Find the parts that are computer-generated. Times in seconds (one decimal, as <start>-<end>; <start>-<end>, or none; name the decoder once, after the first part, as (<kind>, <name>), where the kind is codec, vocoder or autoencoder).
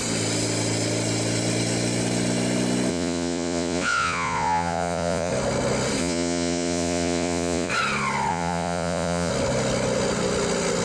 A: 2.9-5.3 (vocoder, Vocos); 6.0-7.7; 8.3-9.3